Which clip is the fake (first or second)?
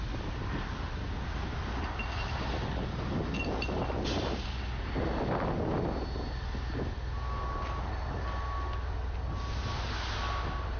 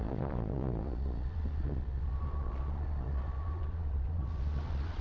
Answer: second